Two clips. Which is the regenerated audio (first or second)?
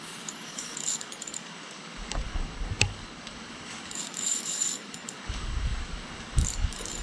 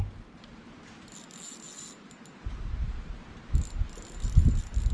first